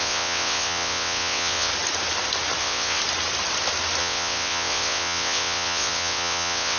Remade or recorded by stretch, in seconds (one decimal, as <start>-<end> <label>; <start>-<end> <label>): 0.0-1.7 remade; 1.7-2.6 recorded; 2.6-3.0 remade; 3.0-4.0 recorded; 4.0-6.8 remade